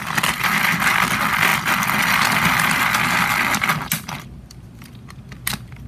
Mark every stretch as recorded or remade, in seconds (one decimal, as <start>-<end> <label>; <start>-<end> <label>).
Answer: 0.0-5.9 recorded